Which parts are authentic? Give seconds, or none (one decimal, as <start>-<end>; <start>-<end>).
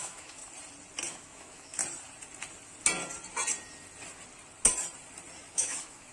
0.4-1.1; 1.8-5.5